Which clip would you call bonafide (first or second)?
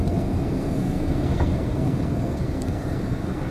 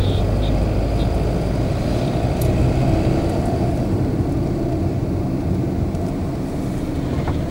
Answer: second